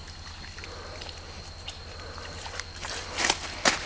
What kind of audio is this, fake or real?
real